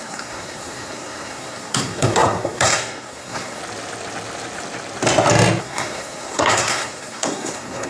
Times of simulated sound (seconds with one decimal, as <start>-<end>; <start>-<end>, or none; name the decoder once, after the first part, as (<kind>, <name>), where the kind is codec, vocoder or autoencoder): 0.0-3.6 (codec, SNAC); 5.6-7.9

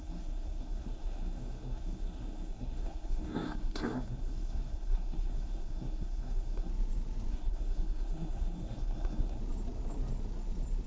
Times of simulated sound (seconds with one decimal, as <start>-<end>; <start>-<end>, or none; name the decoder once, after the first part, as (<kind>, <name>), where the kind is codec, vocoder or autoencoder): 0.0-6.7 (codec, SNAC); 7.3-9.4

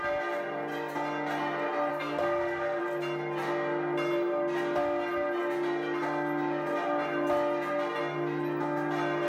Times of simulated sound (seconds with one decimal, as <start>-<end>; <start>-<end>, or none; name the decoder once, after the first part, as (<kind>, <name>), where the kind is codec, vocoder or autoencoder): 1.9-2.8 (codec, SNAC)

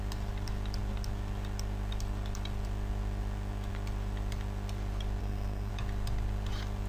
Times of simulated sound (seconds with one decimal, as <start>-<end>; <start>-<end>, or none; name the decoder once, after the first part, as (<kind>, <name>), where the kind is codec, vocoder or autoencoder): 5.2-5.7 (codec, SNAC)

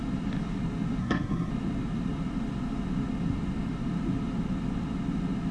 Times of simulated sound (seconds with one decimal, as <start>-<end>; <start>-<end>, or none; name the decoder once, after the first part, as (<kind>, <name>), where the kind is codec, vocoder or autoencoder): 1.0-1.5 (codec, SNAC)

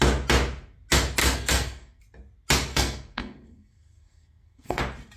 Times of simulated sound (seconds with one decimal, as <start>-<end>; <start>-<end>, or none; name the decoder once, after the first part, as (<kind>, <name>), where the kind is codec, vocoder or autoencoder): 1.2-2.0 (codec, SNAC); 2.7-4.8

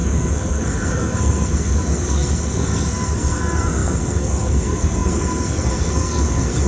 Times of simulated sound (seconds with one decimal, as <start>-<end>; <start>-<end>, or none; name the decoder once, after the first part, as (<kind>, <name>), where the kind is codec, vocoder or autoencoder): 0.0-6.7 (codec, SNAC)

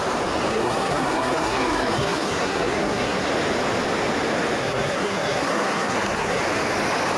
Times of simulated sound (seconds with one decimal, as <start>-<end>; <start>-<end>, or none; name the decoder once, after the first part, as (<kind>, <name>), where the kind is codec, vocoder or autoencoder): 0.5-3.3 (codec, SNAC); 4.6-6.4